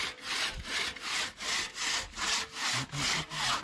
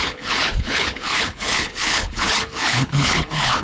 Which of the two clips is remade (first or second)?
second